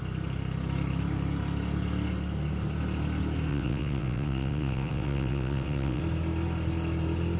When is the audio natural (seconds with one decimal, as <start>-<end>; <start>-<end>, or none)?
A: 0.0-3.5; 6.0-7.4